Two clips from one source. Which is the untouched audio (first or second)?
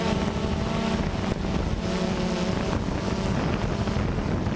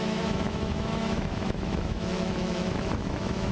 first